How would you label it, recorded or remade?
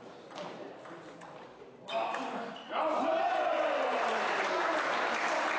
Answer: recorded